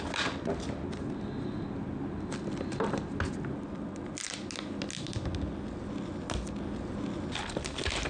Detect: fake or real real